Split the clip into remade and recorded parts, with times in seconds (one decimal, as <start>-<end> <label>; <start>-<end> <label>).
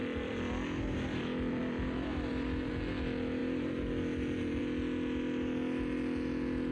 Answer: 0.0-2.7 remade; 2.7-3.4 recorded; 3.4-4.6 remade; 4.6-6.7 recorded